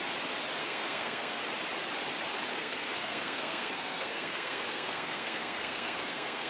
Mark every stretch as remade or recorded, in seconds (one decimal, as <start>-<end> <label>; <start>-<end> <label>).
0.0-0.6 recorded; 0.6-1.4 remade; 1.4-2.5 recorded; 2.5-6.5 remade